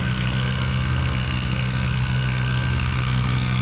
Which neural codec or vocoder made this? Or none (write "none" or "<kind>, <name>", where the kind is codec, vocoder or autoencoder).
codec, SNAC